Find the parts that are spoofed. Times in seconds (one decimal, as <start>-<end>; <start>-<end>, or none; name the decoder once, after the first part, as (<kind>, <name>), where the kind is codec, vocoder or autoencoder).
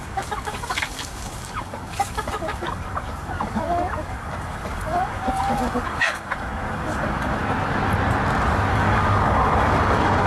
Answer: 0.0-7.4 (codec, DAC); 8.7-10.3